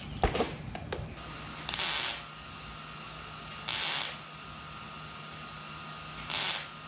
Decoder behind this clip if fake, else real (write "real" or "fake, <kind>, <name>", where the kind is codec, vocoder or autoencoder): real